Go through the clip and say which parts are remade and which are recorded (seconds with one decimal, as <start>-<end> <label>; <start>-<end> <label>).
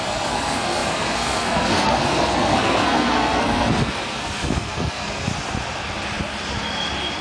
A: 0.0-5.3 remade; 5.3-7.2 recorded